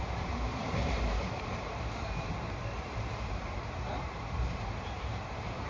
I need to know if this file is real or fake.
fake